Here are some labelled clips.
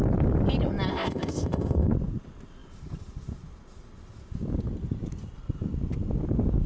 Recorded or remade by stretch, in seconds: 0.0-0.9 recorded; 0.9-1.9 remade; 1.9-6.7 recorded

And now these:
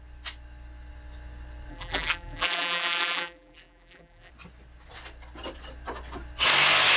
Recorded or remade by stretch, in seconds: 0.0-1.7 recorded; 1.7-4.3 remade; 4.3-7.0 recorded

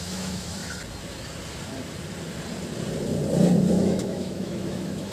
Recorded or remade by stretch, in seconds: 0.0-0.6 remade; 0.6-3.7 recorded; 3.7-5.1 remade

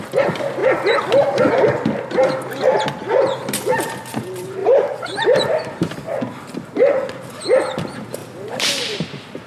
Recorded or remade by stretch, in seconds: 0.0-4.6 recorded; 4.6-5.8 remade; 5.8-8.2 recorded; 8.2-9.5 remade